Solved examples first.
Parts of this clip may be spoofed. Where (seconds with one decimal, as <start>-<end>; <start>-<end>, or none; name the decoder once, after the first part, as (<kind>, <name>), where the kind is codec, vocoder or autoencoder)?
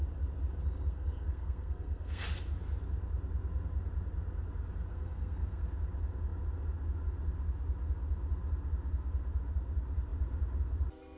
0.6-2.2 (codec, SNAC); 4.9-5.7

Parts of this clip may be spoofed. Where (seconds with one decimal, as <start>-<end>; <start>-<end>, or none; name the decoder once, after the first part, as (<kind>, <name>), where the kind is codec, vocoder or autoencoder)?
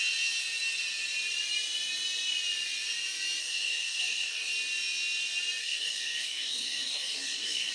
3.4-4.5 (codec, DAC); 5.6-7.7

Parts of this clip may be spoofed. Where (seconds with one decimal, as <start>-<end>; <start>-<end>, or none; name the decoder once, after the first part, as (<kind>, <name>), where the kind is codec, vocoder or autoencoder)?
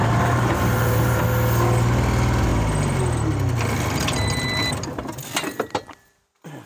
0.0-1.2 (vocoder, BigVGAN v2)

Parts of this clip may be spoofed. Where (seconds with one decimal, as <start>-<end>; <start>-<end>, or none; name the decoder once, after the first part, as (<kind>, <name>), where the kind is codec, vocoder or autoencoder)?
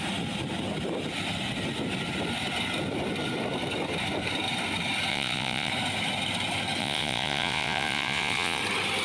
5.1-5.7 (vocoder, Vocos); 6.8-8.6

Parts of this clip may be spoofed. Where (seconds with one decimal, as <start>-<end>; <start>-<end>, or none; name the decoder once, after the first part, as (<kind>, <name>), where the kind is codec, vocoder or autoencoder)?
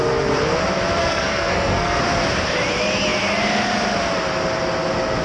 1.0-2.0 (codec, SNAC)